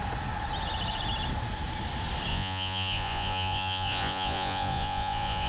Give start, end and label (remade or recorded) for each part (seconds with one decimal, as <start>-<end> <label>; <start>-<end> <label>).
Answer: 0.0-2.3 recorded; 2.3-5.5 remade